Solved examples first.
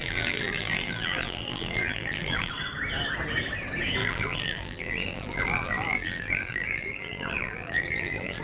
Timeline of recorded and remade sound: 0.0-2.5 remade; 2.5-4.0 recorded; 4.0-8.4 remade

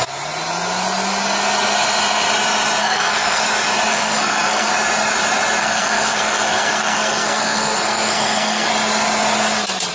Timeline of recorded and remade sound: 0.0-2.8 recorded; 2.8-3.4 remade; 3.4-3.9 recorded; 3.9-4.7 remade; 4.7-5.6 recorded; 5.6-8.7 remade; 8.7-9.9 recorded

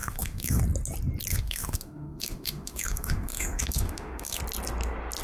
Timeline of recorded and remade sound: 0.0-0.6 remade; 0.6-1.3 recorded; 1.3-4.4 remade; 4.4-5.2 recorded

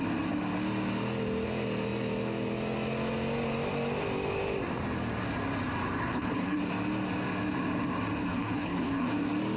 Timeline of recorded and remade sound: 0.0-6.1 recorded; 6.1-6.6 remade; 6.6-8.2 recorded; 8.2-9.1 remade; 9.1-9.6 recorded

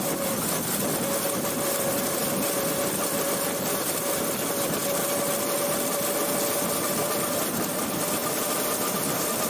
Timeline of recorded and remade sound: 0.0-9.5 recorded